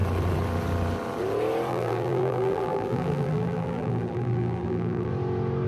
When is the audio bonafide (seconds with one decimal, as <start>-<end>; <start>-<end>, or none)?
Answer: 0.0-1.7; 5.1-5.7